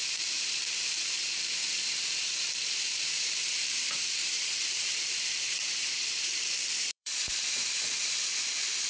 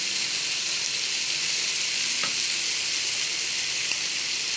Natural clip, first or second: second